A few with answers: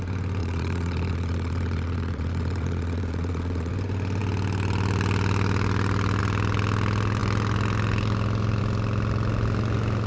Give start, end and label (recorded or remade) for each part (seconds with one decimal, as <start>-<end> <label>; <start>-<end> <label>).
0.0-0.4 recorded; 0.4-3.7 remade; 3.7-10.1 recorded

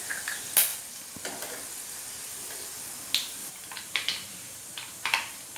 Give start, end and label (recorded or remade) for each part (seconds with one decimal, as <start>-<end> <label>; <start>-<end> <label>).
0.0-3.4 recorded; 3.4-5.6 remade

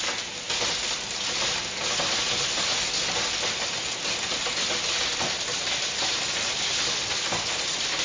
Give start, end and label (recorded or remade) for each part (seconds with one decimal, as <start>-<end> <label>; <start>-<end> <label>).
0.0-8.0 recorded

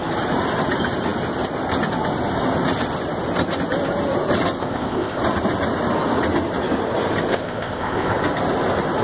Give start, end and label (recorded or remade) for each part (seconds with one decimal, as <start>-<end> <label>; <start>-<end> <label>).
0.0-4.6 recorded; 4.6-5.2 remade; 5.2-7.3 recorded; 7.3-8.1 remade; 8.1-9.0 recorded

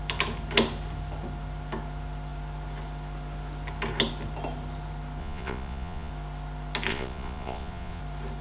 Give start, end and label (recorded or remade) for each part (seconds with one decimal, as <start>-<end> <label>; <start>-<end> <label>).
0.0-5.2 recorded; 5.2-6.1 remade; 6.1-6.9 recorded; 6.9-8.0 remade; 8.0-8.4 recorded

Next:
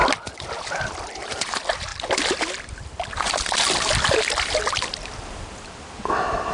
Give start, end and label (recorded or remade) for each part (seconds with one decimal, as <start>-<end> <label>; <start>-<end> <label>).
0.0-1.9 recorded; 1.9-5.8 remade; 5.8-6.5 recorded

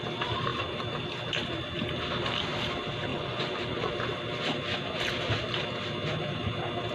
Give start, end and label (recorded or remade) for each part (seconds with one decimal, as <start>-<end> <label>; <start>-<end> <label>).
0.0-3.1 recorded; 3.1-3.9 remade; 3.9-6.9 recorded

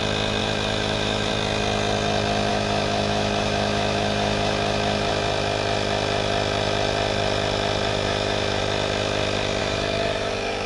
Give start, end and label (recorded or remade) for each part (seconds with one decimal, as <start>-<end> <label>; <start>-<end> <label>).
0.0-0.4 recorded; 0.4-1.3 remade; 1.3-2.5 recorded; 2.5-5.1 remade; 5.1-7.9 recorded; 7.9-8.6 remade; 8.6-9.6 recorded; 9.6-10.7 remade